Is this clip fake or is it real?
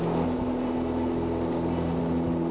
real